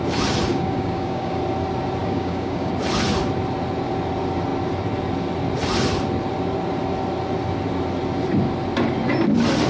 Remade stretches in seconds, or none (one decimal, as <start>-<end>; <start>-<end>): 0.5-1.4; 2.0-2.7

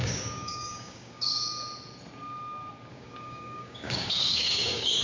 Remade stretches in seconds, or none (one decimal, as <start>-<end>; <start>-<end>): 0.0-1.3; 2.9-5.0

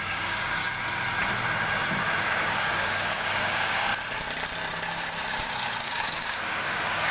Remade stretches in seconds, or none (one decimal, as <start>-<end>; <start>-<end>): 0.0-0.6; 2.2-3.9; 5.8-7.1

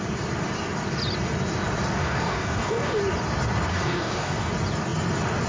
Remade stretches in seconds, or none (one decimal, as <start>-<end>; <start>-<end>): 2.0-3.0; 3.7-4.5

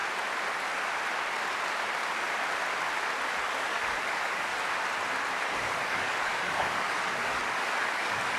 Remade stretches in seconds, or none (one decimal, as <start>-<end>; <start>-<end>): 3.4-4.5; 5.4-8.4

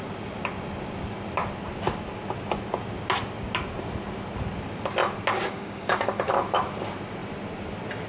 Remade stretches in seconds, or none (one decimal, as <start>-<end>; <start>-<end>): 5.3-6.3